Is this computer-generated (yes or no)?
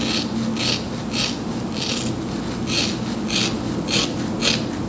no